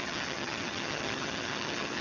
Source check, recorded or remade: remade